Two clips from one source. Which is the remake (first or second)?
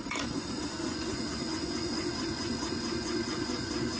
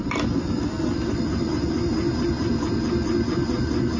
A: first